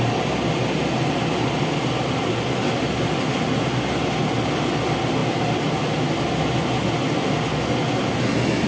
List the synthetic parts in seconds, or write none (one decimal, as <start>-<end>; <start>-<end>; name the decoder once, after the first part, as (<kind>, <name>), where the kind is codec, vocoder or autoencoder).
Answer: none